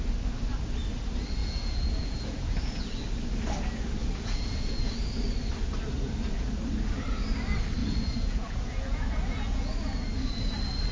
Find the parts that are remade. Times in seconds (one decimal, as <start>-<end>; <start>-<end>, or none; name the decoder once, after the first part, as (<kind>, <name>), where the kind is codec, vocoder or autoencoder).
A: 1.4-2.8 (vocoder, Vocos); 4.0-4.8; 7.8-9.7